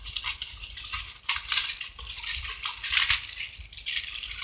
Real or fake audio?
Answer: real